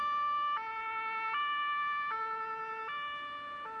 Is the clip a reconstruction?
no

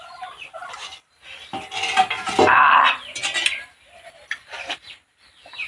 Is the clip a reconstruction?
yes